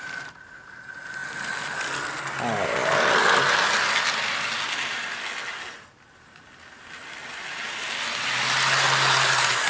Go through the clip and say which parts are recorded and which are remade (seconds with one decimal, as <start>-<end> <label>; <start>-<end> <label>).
0.0-9.7 recorded